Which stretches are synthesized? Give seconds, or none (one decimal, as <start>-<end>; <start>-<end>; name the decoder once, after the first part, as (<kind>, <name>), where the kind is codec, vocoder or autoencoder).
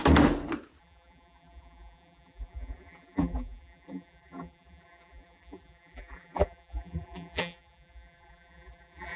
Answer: 0.8-9.2 (vocoder, BigVGAN v2)